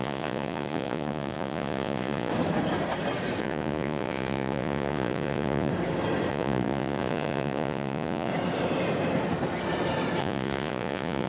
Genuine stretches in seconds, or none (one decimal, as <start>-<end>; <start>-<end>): 2.3-3.4; 5.7-6.3; 8.3-10.2